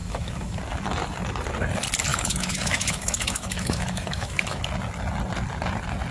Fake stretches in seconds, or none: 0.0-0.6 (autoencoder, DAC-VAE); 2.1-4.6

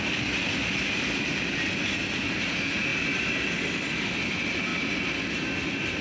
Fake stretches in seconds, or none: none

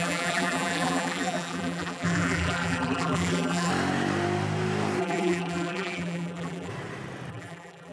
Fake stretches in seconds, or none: 0.0-3.7 (vocoder, BigVGAN v2); 5.0-6.7; 7.3-7.9

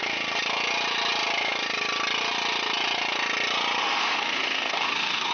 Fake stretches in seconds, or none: 3.8-5.3 (autoencoder, DAC-VAE)

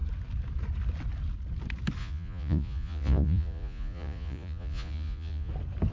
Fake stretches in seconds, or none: 2.0-5.5 (vocoder, Vocos)

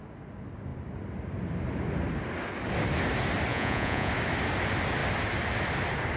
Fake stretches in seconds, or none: 3.5-4.1 (vocoder, Vocos)